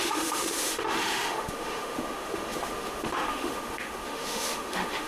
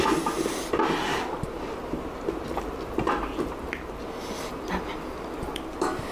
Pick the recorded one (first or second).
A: second